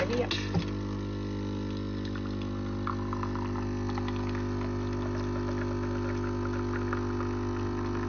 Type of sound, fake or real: real